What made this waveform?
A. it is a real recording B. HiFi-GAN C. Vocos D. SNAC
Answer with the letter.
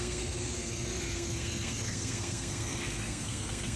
D